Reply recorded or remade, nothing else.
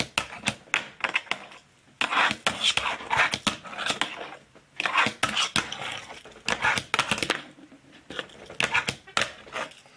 recorded